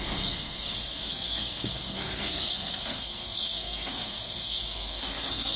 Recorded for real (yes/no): no